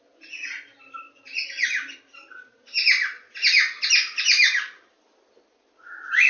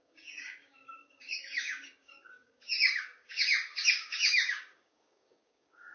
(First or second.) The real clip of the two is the first